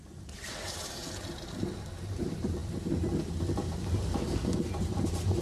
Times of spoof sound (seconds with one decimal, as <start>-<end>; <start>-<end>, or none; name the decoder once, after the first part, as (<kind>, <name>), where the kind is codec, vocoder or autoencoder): 0.0-1.0 (vocoder, BigVGAN v2); 2.2-2.6; 4.6-5.4